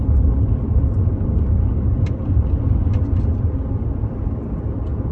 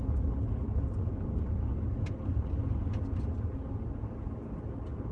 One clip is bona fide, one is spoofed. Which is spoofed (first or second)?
first